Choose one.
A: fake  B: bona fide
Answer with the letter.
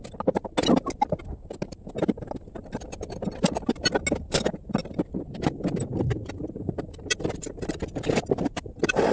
B